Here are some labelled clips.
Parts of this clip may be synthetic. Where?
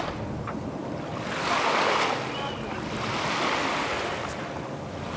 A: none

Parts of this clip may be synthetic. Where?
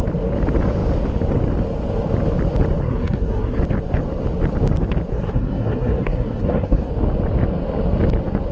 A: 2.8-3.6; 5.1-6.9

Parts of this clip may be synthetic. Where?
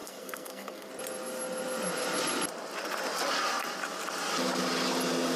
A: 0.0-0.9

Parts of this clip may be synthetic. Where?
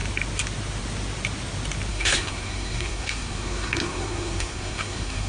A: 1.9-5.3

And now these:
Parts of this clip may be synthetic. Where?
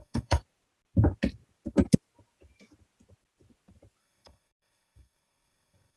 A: 0.0-0.4; 4.0-6.0